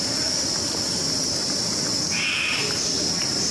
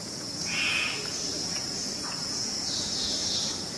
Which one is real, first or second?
first